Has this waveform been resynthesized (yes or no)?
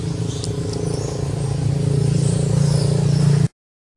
no